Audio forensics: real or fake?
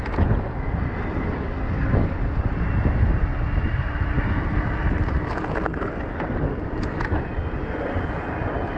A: real